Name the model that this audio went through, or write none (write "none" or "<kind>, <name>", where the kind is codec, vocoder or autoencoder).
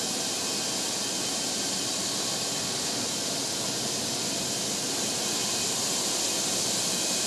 none